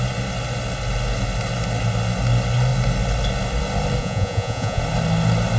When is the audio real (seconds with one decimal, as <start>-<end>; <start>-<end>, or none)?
0.0-4.0; 4.8-5.6